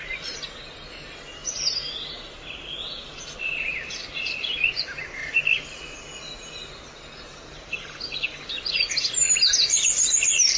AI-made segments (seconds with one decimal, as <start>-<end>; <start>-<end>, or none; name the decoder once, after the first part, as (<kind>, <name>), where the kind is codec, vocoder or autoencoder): none